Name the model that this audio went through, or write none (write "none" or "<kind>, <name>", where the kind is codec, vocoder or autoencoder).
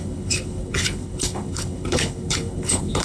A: codec, HILCodec